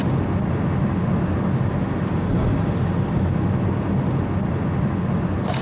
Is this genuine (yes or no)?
yes